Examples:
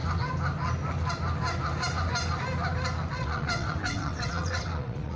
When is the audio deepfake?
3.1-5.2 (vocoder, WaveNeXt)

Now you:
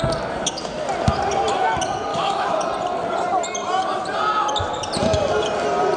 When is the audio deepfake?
2.1-2.6 (autoencoder, DAC-VAE)

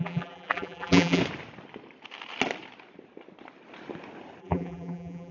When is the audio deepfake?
0.0-1.2 (vocoder, BigVGAN v2); 4.4-5.3

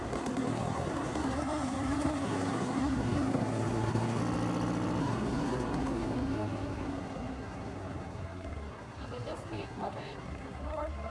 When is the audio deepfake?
0.0-4.2 (codec, SNAC); 5.0-11.1

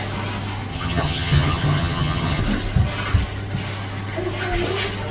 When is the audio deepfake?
0.7-2.4 (vocoder, HiFi-GAN)

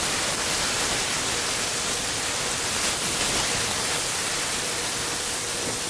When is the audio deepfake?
4.2-4.7 (vocoder, BigVGAN v2)

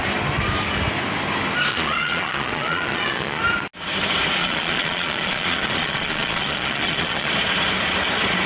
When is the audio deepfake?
1.7-3.4 (vocoder, Vocos); 4.4-7.3